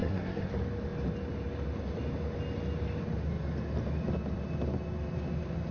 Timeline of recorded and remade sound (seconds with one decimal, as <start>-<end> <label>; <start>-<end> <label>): 0.0-0.5 remade; 0.5-5.7 recorded